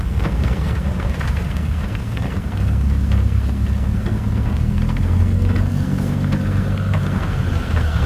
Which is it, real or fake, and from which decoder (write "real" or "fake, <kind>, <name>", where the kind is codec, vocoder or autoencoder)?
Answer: fake, codec, SNAC